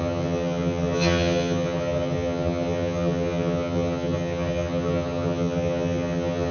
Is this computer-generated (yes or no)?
yes